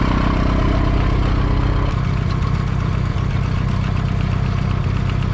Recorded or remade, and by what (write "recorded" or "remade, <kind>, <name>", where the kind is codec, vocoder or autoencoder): recorded